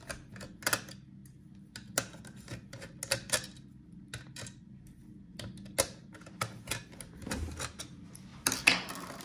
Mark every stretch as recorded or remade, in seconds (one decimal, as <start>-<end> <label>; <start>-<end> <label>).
0.0-8.3 recorded; 8.3-9.2 remade